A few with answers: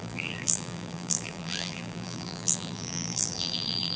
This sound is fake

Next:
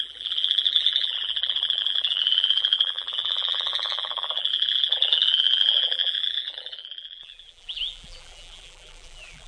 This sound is fake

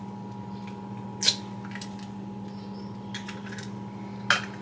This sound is real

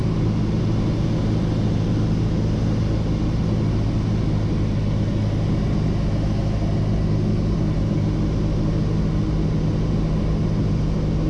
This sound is real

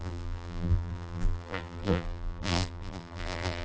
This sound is fake